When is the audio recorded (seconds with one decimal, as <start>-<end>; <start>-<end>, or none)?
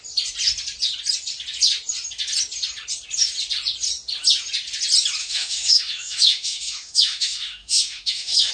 0.0-5.2